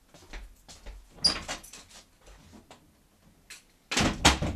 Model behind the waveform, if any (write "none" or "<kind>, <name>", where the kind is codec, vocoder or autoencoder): none